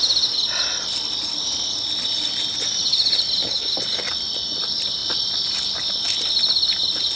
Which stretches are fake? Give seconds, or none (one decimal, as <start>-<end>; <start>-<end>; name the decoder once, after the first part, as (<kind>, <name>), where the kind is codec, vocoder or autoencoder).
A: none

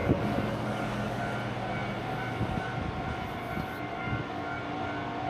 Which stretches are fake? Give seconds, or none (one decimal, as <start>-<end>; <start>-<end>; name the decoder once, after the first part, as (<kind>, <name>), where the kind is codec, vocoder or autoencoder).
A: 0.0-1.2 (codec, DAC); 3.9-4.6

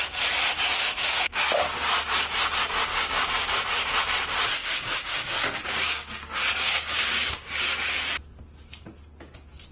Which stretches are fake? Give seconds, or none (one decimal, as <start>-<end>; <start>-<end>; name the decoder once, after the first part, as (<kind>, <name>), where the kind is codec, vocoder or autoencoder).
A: 0.4-1.9 (codec, DAC); 2.9-3.5; 4.6-8.0

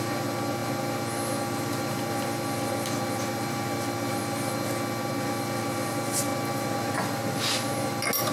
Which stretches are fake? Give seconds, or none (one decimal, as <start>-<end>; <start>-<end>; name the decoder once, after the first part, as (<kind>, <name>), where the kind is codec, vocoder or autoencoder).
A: none

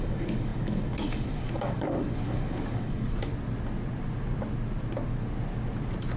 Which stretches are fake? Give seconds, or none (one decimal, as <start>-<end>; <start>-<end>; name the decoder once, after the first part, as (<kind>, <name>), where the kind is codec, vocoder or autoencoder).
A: 0.0-3.3 (codec, DAC)

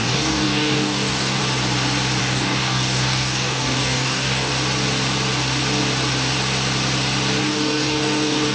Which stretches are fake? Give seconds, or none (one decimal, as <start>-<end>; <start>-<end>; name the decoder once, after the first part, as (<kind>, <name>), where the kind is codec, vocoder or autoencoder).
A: 0.0-1.4 (codec, DAC); 2.2-4.5; 7.4-8.5

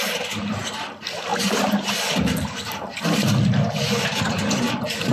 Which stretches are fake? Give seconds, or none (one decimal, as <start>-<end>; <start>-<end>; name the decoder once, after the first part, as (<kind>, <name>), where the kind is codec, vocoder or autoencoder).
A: none